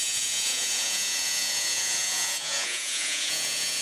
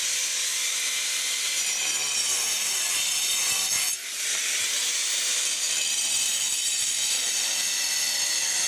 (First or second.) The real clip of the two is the second